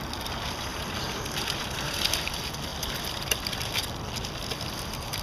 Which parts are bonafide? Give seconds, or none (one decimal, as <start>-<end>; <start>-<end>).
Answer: 0.0-0.7; 2.3-2.7; 3.9-5.2